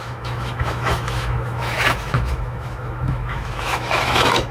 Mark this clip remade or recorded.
remade